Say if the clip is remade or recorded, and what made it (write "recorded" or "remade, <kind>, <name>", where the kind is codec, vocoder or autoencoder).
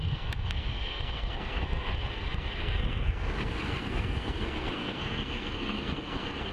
remade, codec, SNAC